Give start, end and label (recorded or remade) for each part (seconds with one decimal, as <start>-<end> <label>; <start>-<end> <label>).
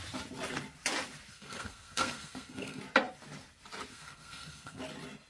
0.0-1.3 recorded; 1.3-2.8 remade; 2.8-3.9 recorded; 3.9-4.8 remade; 4.8-5.3 recorded